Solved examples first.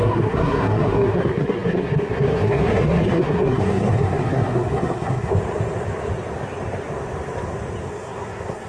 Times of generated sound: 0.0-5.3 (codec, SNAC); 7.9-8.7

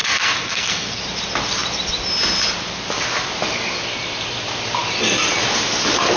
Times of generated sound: 0.0-1.0 (codec, SNAC)

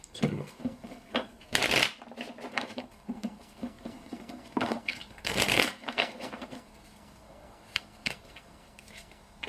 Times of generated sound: 0.0-1.6 (codec, SNAC); 2.5-9.5

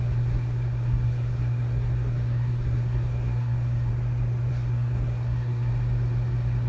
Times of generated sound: 0.0-3.9 (codec, SNAC); 4.5-5.7

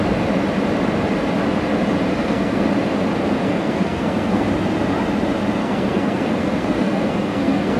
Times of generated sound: 2.1-2.7 (codec, SNAC); 3.4-4.5; 5.6-7.8

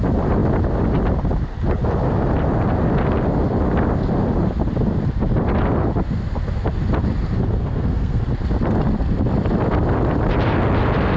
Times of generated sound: 7.6-8.2 (codec, SNAC)

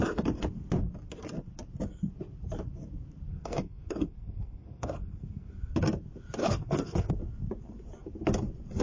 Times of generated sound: 3.3-5.7 (codec, SNAC); 6.4-7.1